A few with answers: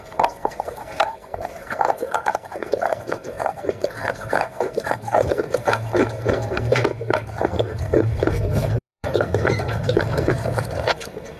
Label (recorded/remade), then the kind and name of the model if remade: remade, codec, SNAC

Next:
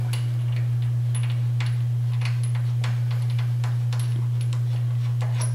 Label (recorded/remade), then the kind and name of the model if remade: recorded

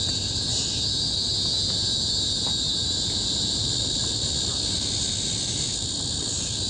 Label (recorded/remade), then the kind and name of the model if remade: recorded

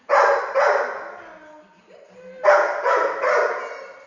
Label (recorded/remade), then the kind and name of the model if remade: recorded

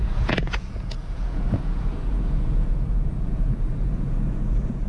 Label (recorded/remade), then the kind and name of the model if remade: remade, vocoder, Vocos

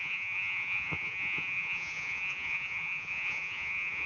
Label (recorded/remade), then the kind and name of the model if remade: remade, vocoder, Vocos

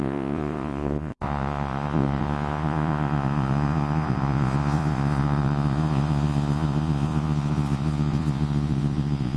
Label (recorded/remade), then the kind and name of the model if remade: remade, vocoder, Vocos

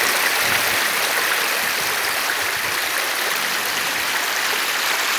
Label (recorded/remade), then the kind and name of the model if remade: recorded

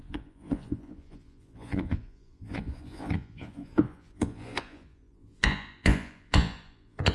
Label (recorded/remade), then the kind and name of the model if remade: remade, vocoder, Vocos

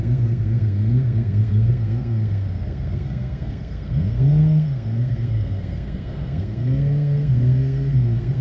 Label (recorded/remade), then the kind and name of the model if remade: remade, codec, SNAC